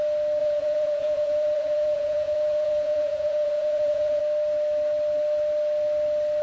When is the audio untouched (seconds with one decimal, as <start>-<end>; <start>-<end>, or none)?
0.0-0.4; 4.2-6.4